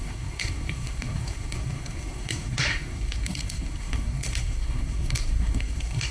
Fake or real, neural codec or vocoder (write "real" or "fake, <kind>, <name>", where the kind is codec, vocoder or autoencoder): fake, codec, SNAC